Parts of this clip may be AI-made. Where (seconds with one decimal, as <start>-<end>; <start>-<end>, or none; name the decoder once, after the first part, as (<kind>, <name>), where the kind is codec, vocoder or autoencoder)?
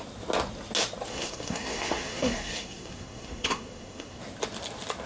1.1-4.2 (codec, SNAC)